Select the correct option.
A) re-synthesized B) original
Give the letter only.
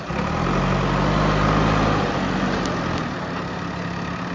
B